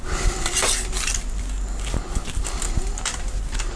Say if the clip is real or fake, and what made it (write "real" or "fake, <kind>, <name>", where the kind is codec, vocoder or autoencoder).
real